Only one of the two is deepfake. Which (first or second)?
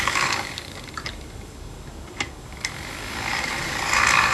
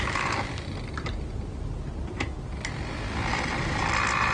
first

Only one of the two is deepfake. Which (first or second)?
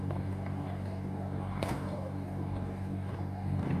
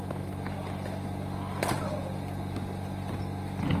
first